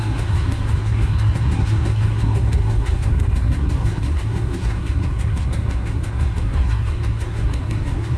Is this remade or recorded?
remade